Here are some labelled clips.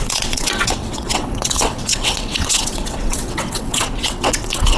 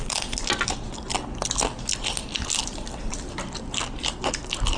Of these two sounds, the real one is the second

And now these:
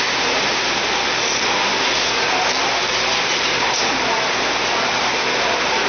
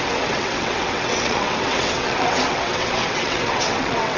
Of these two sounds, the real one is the first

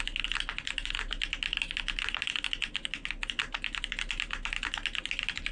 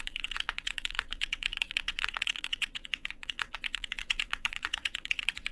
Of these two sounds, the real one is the first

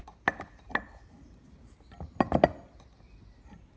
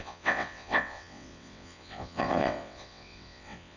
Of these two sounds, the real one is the first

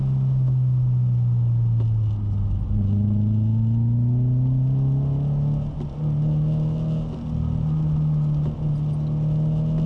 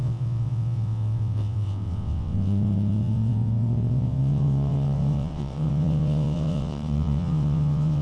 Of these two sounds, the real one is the first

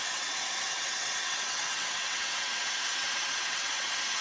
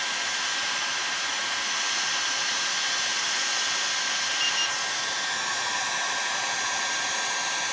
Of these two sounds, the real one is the second